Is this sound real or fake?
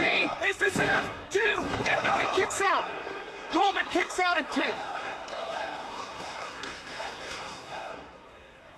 fake